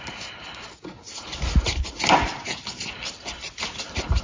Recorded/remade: recorded